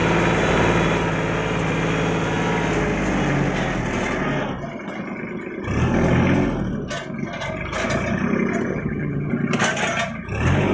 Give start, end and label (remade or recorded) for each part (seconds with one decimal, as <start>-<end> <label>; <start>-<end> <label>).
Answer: 0.0-8.7 recorded; 8.7-9.3 remade; 9.3-10.7 recorded